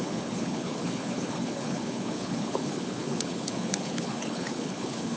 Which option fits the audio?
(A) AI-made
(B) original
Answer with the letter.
A